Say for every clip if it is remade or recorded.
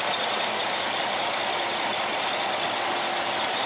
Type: recorded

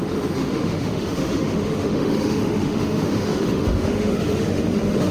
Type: remade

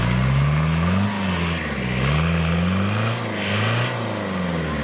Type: recorded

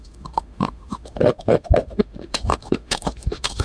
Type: remade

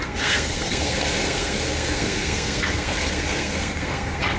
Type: remade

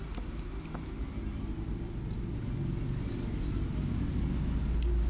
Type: recorded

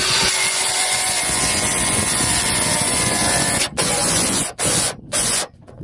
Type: remade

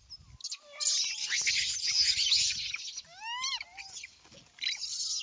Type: recorded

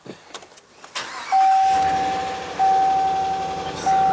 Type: recorded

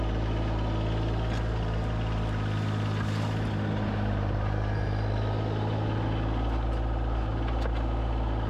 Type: recorded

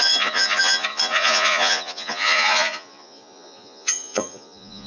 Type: remade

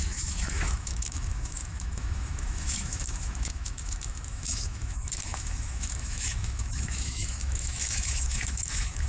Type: remade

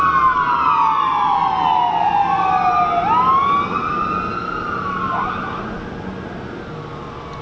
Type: recorded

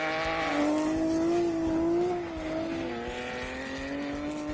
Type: recorded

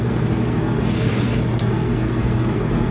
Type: remade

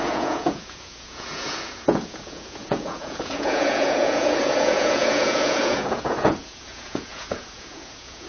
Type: remade